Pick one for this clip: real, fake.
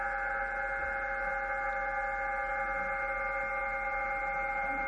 real